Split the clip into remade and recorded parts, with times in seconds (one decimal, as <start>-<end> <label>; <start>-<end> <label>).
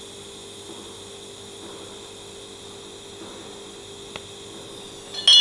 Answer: 0.0-5.4 recorded